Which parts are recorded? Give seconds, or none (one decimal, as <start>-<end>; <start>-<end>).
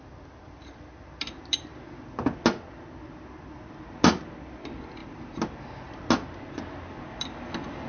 0.0-7.9